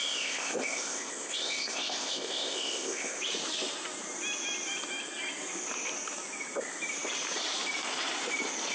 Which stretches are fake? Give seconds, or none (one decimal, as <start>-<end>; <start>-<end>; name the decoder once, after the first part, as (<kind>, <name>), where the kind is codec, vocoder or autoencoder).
0.0-3.2 (codec, ZipCodec)